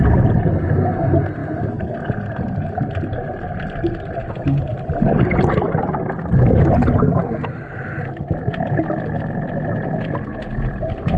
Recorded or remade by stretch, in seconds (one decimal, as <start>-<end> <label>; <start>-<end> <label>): 0.0-11.2 recorded